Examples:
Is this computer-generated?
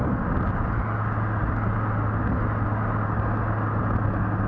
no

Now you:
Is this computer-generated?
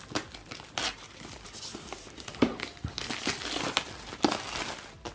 no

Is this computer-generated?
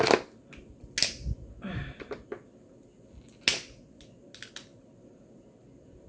no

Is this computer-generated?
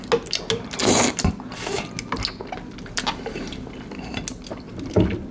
no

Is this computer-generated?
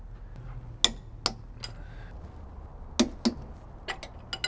no